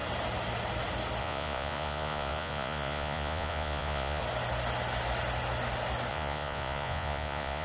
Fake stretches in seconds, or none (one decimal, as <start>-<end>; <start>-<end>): 1.2-4.2; 6.1-7.6